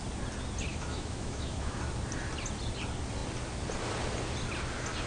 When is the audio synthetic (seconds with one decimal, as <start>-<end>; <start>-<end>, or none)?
0.7-1.8